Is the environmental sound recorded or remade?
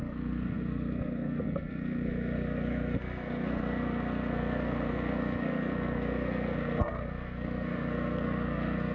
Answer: remade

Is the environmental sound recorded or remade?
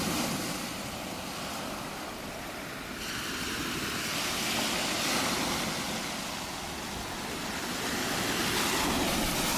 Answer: recorded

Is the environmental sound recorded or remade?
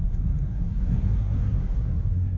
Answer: remade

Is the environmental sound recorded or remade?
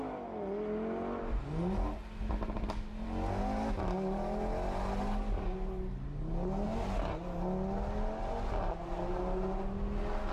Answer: recorded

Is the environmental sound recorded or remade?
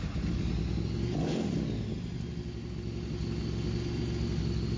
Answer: recorded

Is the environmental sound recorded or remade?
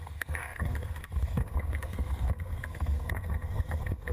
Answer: remade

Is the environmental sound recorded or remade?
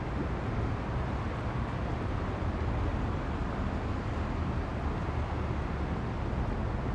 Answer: recorded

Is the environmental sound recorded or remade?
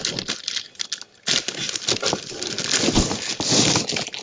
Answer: recorded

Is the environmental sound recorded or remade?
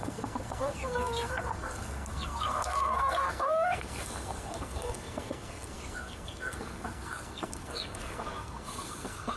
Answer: remade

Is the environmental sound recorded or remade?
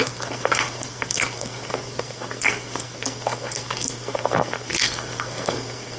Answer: remade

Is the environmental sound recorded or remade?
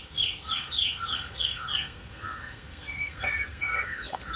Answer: remade